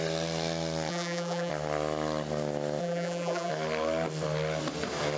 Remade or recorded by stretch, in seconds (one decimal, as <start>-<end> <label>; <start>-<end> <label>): 0.0-0.9 recorded; 0.9-1.5 remade; 1.5-2.8 recorded; 2.8-3.5 remade; 3.5-5.2 recorded